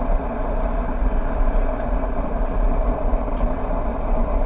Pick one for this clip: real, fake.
real